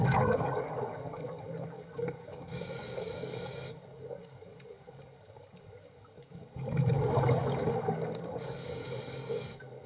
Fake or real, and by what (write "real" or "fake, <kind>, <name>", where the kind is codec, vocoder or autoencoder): fake, codec, DAC